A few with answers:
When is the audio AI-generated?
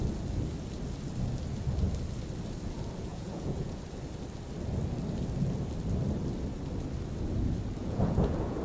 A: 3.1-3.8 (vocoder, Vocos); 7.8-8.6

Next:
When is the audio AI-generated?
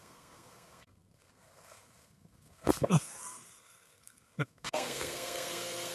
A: 0.0-5.9 (codec, SNAC)